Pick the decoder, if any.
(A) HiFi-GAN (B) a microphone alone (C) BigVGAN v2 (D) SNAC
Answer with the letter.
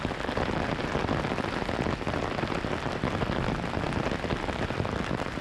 B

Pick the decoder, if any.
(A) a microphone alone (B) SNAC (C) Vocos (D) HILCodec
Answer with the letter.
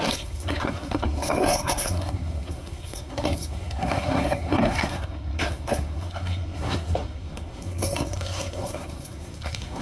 B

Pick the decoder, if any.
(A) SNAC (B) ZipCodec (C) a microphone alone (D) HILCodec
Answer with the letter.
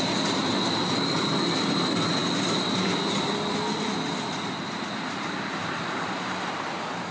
C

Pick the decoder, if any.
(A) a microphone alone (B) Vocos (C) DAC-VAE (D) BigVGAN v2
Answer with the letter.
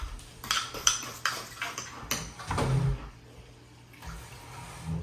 A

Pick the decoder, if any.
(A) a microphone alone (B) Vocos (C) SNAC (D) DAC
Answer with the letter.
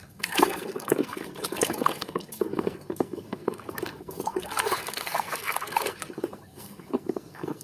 C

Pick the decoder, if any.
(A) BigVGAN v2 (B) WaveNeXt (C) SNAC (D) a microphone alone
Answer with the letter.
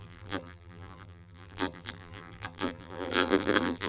A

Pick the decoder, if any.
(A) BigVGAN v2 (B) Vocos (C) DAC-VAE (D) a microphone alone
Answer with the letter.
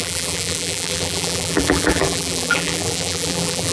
A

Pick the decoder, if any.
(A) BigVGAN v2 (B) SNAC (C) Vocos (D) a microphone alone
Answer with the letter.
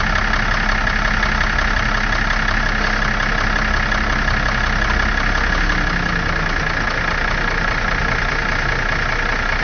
D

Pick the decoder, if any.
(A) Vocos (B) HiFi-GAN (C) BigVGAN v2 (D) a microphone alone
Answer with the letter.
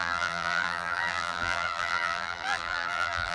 C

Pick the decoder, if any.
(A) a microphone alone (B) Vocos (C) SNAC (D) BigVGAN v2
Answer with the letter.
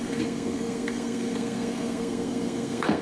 C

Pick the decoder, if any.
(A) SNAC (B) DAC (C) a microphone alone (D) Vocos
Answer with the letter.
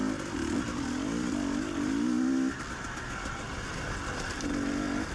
C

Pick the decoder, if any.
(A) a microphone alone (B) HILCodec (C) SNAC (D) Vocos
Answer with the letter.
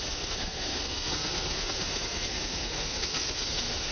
C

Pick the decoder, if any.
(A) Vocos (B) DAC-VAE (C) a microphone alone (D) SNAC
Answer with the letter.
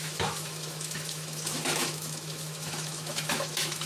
B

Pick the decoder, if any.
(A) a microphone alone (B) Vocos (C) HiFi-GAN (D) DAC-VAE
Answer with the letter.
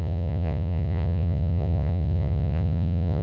B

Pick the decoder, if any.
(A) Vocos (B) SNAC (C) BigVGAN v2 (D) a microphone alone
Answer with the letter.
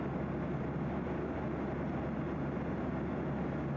D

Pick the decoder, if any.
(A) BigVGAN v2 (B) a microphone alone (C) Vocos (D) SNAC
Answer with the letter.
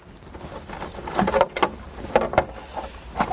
B